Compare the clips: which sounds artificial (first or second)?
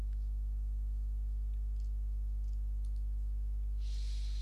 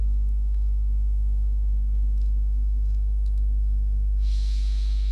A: second